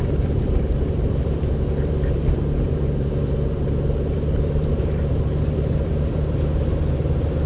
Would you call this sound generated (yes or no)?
yes